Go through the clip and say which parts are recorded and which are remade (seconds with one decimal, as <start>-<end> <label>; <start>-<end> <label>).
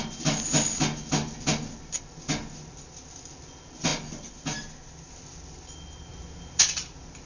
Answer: 0.0-7.2 recorded